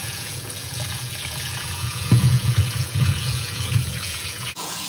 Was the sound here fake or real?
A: fake